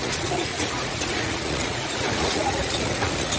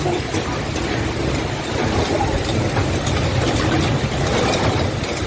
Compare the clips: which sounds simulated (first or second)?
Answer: first